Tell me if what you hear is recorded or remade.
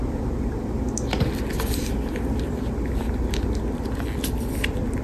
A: recorded